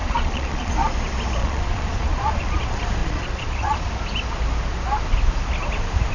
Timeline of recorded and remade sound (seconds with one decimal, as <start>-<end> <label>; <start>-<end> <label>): 0.0-0.7 remade; 0.7-1.4 recorded; 1.4-2.6 remade; 2.6-3.0 recorded; 3.0-3.9 remade; 3.9-6.1 recorded